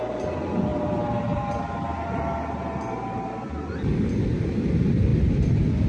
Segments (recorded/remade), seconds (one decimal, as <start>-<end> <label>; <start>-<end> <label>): 0.0-5.9 recorded